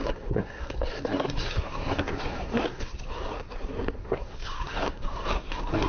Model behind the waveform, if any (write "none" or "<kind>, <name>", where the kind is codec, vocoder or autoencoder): codec, SNAC